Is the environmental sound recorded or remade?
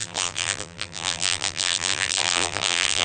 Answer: remade